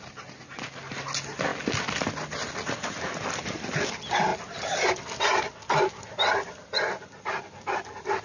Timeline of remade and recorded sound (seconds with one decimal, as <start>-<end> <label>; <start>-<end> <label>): 0.0-8.2 recorded

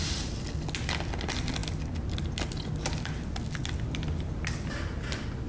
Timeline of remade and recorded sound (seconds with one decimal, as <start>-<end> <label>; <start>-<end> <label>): 0.0-5.5 recorded

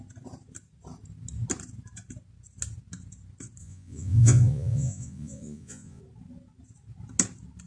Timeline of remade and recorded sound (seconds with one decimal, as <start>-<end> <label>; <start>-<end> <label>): 0.0-3.6 recorded; 3.6-6.0 remade; 6.0-7.7 recorded

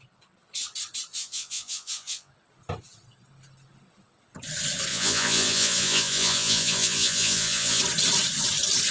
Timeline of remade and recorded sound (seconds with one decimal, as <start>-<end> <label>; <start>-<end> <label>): 0.0-1.1 recorded; 1.1-2.3 remade; 2.3-4.9 recorded; 4.9-7.8 remade; 7.8-8.9 recorded

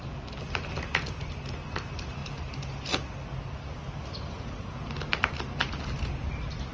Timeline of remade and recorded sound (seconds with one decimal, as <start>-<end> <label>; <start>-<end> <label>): 0.0-6.7 recorded

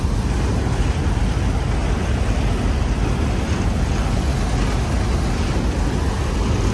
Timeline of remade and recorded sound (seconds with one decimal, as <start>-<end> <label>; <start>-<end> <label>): 0.0-6.7 recorded

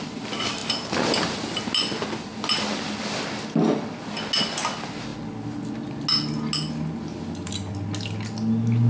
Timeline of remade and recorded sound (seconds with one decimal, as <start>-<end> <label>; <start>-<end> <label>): 0.0-8.9 recorded